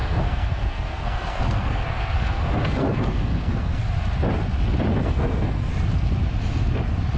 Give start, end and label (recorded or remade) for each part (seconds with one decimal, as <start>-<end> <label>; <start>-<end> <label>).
0.0-3.8 remade; 3.8-4.9 recorded; 4.9-5.7 remade; 5.7-7.2 recorded

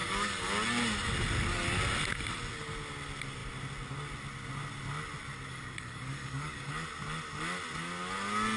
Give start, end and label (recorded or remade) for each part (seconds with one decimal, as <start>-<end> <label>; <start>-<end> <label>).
0.0-0.5 remade; 0.5-5.5 recorded; 5.5-6.7 remade; 6.7-8.6 recorded